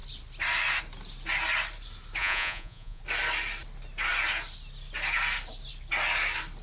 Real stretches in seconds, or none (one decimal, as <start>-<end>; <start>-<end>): 0.0-2.2; 3.0-6.6